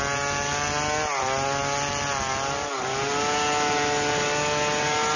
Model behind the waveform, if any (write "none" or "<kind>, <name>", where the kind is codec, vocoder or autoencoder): none